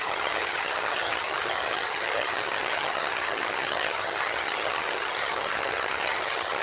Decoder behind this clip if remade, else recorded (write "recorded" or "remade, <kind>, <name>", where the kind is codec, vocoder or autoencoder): remade, vocoder, HiFi-GAN